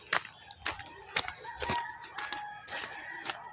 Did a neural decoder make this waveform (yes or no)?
no